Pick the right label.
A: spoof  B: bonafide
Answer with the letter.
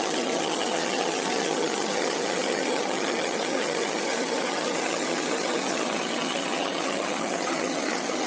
A